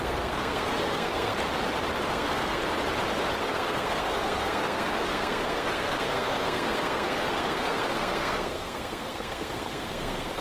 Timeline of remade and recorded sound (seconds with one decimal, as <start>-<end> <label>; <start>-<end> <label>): 0.0-1.3 remade; 1.3-2.1 recorded; 2.1-2.6 remade; 2.6-3.4 recorded; 3.4-10.4 remade